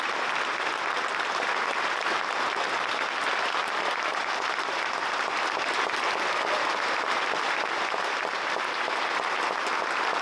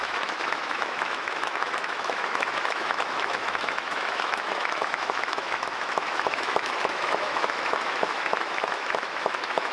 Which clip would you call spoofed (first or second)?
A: second